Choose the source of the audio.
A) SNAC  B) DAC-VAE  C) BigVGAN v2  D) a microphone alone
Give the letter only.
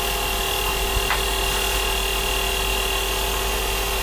D